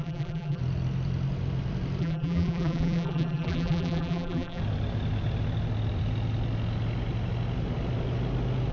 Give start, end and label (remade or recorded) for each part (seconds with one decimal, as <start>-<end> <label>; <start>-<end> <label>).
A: 0.0-0.6 remade; 0.6-2.0 recorded; 2.0-4.6 remade; 4.6-8.7 recorded